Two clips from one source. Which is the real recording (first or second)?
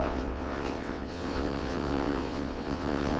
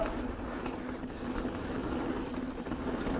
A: second